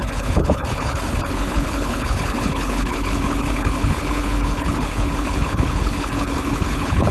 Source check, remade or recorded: remade